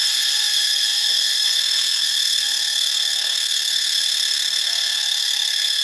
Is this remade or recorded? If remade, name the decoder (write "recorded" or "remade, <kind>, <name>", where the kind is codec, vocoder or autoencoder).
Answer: remade, codec, SNAC